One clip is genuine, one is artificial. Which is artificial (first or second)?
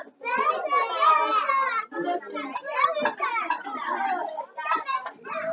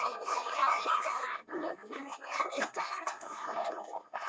second